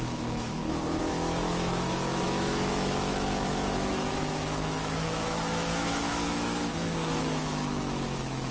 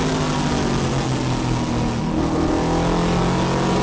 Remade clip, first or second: first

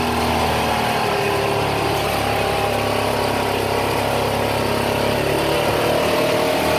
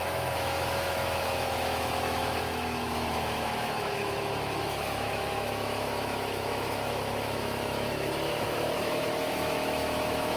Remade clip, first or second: second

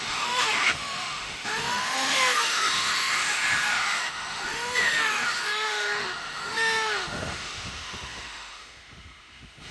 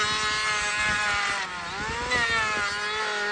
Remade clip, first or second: first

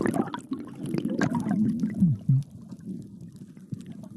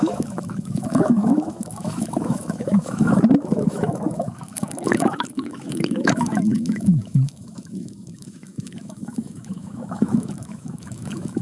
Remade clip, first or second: second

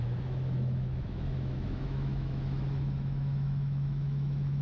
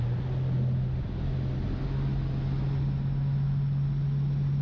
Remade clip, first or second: first